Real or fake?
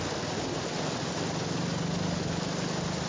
real